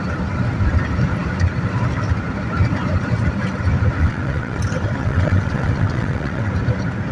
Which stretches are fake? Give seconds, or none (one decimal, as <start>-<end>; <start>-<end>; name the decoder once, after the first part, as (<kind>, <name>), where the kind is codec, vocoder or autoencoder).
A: 4.0-4.6 (vocoder, WaveNeXt); 5.0-6.5